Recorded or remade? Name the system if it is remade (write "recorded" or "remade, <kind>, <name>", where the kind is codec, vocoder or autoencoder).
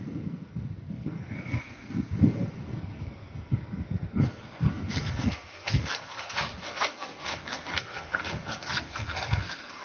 remade, codec, SNAC